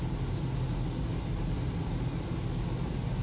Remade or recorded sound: recorded